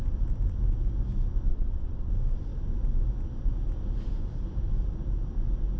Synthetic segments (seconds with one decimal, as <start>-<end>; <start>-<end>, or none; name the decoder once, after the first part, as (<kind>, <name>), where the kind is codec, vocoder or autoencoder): 1.5-2.1 (vocoder, WaveNeXt)